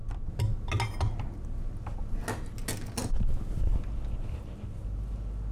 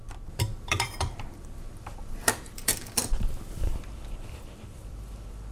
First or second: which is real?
first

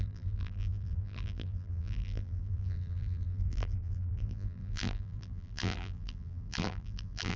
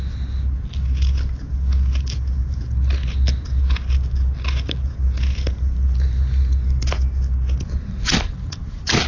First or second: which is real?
second